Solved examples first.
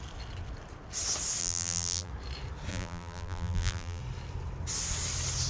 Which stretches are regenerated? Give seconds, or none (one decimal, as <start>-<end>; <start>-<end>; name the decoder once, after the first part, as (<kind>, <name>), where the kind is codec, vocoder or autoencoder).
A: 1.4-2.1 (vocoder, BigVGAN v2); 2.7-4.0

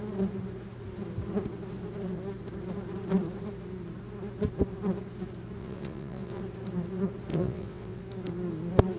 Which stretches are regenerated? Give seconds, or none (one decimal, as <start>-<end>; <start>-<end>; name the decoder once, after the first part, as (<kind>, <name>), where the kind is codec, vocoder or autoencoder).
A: 5.6-6.4 (vocoder, WaveNeXt); 7.3-8.0

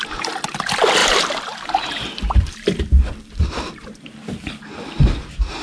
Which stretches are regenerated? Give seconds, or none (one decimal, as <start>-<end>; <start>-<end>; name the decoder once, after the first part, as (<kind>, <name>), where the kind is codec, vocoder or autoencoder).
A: 1.0-4.4 (vocoder, BigVGAN v2)